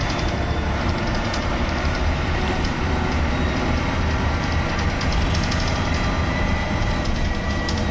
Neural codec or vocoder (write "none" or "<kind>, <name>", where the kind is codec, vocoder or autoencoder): vocoder, BigVGAN v2